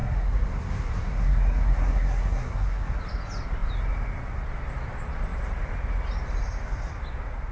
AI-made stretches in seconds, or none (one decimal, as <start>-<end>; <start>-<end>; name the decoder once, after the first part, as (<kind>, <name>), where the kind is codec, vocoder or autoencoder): 0.0-3.0 (codec, SNAC)